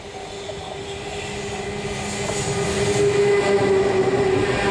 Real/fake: real